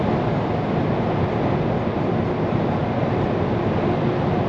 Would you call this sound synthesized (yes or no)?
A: no